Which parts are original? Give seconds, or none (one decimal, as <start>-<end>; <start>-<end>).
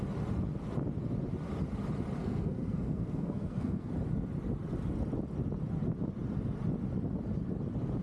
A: 0.0-2.2; 3.9-8.0